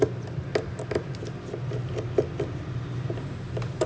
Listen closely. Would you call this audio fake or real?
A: real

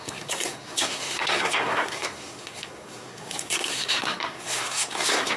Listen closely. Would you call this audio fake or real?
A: fake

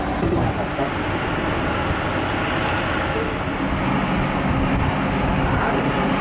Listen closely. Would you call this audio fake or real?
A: real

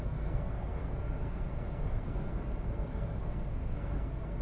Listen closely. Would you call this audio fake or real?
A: fake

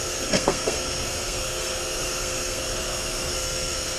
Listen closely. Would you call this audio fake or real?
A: fake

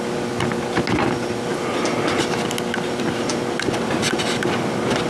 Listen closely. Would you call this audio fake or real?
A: real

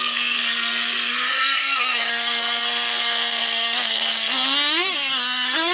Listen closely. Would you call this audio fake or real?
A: fake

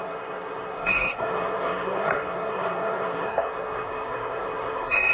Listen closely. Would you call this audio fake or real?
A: fake